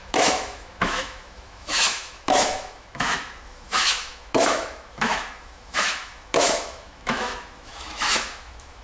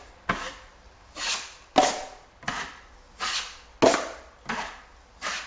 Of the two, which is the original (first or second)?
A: second